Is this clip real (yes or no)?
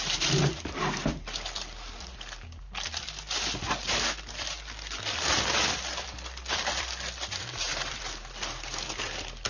no